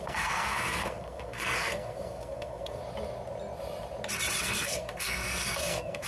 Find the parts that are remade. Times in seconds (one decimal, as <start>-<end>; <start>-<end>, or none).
0.0-2.8; 4.4-6.1